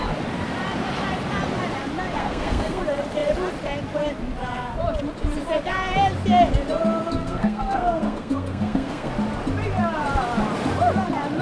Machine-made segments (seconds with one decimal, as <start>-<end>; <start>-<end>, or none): 2.2-2.8; 7.1-9.1